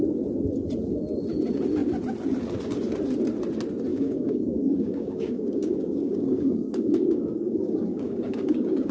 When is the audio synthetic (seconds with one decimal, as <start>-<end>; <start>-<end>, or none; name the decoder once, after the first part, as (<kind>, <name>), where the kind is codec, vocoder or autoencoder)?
3.9-8.9 (codec, DAC)